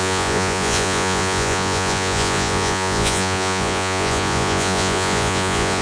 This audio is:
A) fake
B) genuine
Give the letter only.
A